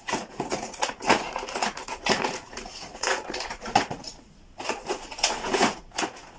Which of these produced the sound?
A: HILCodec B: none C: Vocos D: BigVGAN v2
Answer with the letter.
C